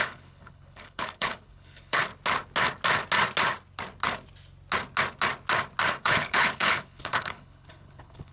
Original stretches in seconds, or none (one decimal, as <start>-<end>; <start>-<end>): 2.1-6.0